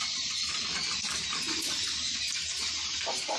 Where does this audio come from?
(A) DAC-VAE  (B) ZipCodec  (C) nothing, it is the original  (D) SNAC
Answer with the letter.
C